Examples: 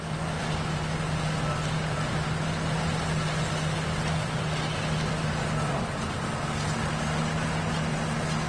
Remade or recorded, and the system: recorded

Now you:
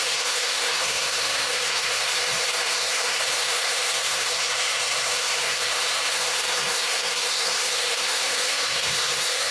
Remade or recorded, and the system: remade, codec, SNAC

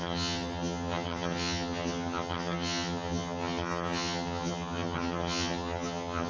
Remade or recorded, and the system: remade, vocoder, HiFi-GAN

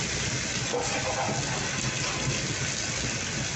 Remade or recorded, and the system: recorded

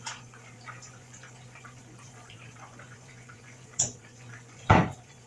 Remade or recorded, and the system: remade, vocoder, Vocos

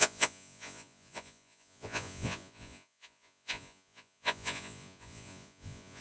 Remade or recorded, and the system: remade, vocoder, Vocos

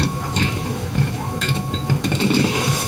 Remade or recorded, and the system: remade, autoencoder, DAC-VAE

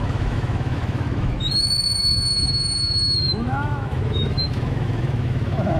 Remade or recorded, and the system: remade, autoencoder, DAC-VAE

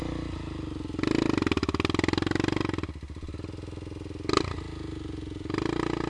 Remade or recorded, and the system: recorded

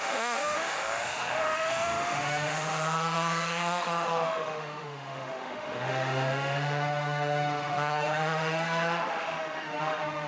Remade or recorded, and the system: remade, autoencoder, DAC-VAE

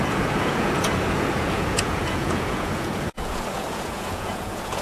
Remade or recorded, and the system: remade, vocoder, Vocos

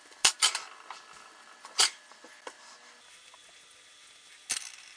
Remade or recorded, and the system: recorded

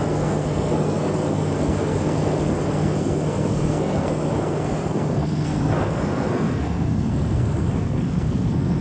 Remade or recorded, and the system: remade, codec, SNAC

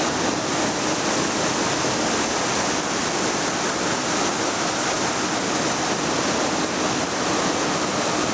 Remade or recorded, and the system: recorded